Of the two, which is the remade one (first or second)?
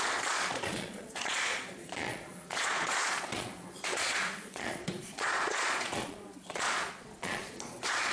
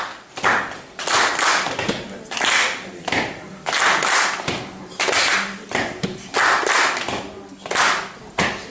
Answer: first